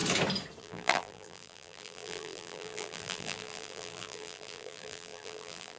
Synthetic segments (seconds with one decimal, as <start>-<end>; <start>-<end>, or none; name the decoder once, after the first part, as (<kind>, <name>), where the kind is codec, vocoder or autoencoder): 0.6-5.8 (vocoder, BigVGAN v2)